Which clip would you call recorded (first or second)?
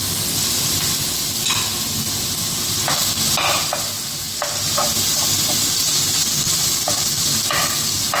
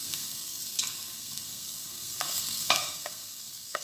first